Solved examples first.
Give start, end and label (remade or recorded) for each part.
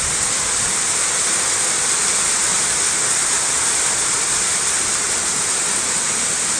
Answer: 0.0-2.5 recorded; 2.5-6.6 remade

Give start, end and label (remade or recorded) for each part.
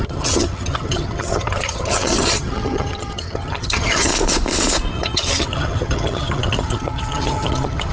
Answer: 0.0-4.1 remade; 4.1-4.9 recorded; 4.9-7.9 remade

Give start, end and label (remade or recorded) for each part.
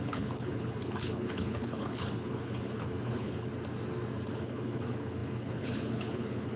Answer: 0.0-3.5 remade; 3.5-4.3 recorded; 4.3-6.6 remade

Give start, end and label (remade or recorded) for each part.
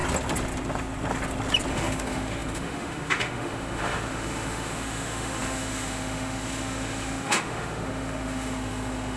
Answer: 0.0-1.7 recorded; 1.7-9.2 remade